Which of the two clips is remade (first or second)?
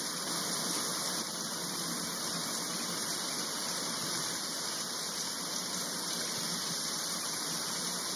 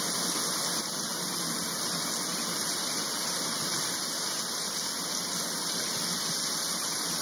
first